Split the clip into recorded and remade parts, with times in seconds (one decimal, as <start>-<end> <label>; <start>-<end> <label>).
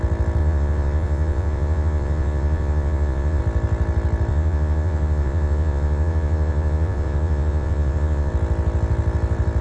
0.0-0.4 recorded; 0.4-3.4 remade; 3.4-4.3 recorded; 4.3-8.3 remade; 8.3-9.6 recorded